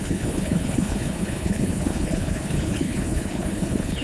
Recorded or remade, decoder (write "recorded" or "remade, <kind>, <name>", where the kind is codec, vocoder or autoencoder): remade, codec, HILCodec